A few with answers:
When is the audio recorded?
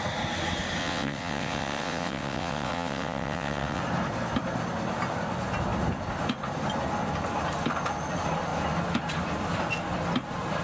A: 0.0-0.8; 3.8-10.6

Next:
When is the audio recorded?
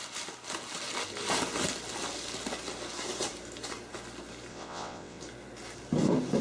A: 0.0-4.5; 5.2-6.4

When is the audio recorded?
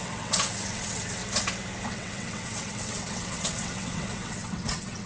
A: 1.2-1.9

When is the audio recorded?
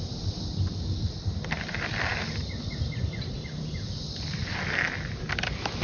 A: 0.0-5.8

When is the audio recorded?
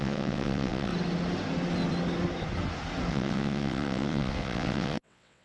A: 0.9-3.1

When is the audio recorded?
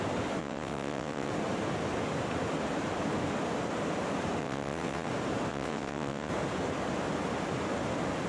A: 0.0-0.4; 1.3-4.4; 5.1-5.5; 6.3-8.3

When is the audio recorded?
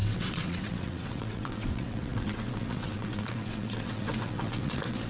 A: none